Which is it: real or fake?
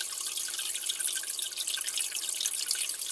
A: real